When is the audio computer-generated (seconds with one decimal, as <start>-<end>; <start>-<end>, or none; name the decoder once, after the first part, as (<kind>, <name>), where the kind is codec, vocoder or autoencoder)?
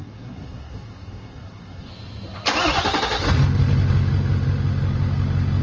0.0-1.9 (codec, SNAC)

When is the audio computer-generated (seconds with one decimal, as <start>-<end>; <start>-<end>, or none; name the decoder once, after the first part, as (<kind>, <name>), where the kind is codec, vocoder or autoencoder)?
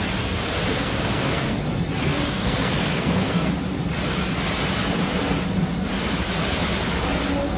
0.7-1.6 (codec, SNAC); 2.0-3.5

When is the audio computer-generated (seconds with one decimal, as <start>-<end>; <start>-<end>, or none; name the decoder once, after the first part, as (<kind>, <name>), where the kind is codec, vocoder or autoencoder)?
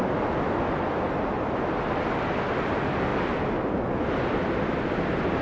none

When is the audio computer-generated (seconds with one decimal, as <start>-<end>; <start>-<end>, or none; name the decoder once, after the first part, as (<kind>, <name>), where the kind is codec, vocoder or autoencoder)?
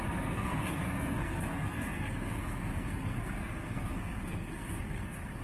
0.0-5.4 (codec, SNAC)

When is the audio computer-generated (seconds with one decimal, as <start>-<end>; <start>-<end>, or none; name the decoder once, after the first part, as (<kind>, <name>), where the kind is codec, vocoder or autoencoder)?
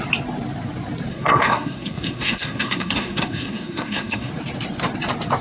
1.1-4.3 (codec, SNAC)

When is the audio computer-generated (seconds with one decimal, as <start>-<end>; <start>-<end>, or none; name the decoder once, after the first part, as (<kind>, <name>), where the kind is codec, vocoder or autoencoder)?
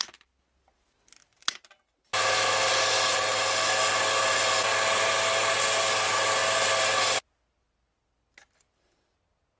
none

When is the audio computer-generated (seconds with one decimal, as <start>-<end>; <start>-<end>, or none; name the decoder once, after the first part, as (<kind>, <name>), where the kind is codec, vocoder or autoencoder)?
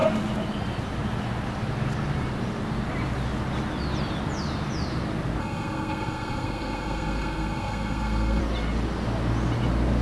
5.4-8.4 (codec, SNAC)